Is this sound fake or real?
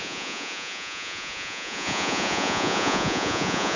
fake